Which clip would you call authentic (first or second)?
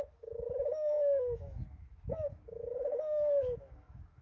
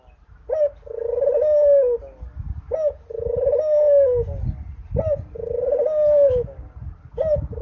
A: second